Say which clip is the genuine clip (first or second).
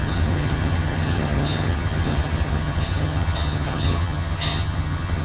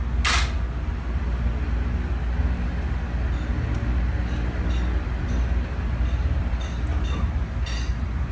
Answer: second